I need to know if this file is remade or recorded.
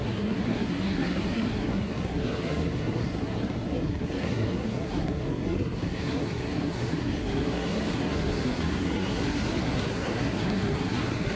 remade